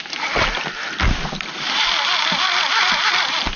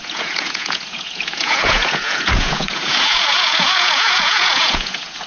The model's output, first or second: second